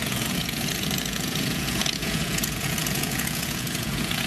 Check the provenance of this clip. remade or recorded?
remade